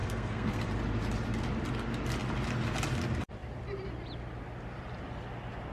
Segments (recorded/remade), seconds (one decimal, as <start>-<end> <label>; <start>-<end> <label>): 0.0-0.7 remade; 0.7-5.7 recorded